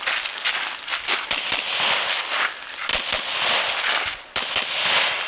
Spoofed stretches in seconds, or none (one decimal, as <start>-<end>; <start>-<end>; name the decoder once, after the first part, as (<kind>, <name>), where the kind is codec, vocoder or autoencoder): 0.0-5.3 (vocoder, BigVGAN v2)